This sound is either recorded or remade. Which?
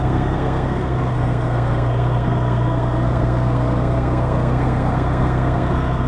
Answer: remade